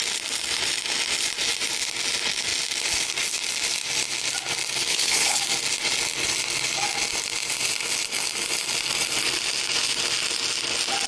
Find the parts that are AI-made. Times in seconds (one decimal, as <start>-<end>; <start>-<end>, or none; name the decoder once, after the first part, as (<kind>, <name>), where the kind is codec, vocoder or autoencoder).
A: 4.9-5.4 (codec, HILCodec)